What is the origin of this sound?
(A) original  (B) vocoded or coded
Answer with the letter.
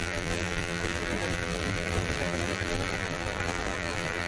B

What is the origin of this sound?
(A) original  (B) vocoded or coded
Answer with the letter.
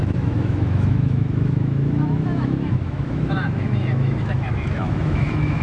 B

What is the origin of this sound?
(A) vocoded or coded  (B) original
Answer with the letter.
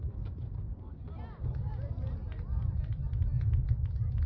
B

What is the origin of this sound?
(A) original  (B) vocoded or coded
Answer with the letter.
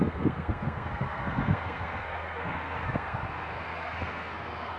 B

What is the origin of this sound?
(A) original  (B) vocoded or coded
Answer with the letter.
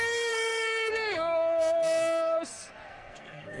B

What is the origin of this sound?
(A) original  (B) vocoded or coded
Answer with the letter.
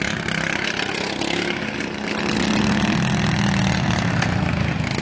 A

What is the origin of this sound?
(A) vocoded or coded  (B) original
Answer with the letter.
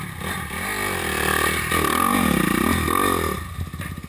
B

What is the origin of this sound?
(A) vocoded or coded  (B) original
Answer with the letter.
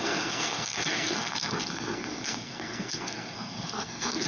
A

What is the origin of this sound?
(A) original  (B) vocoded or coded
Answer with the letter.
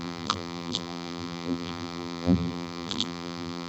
B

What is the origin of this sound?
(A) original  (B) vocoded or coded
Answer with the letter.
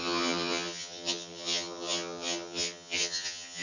B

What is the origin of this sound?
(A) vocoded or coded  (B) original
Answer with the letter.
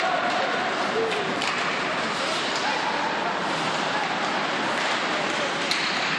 B